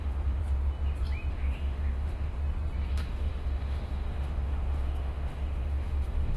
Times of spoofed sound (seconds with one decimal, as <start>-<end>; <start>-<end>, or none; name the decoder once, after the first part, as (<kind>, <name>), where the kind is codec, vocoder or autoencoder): 0.0-0.4 (autoencoder, DAC-VAE); 1.3-2.4; 2.9-6.4